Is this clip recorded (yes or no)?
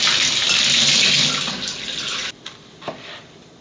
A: yes